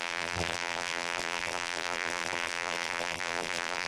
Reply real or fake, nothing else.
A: fake